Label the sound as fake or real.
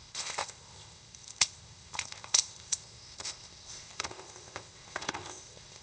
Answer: fake